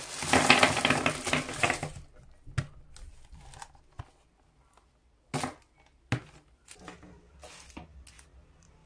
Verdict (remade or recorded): recorded